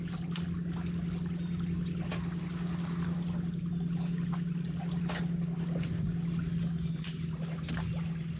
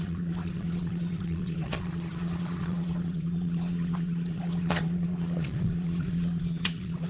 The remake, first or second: second